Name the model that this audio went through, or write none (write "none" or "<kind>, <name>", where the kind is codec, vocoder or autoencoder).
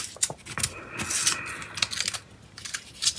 none